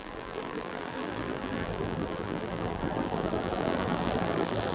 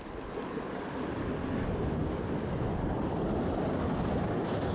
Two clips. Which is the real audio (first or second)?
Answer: second